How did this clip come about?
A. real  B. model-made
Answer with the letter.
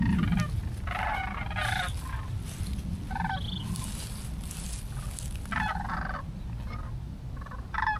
A